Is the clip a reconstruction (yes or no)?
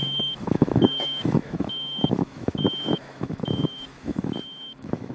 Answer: yes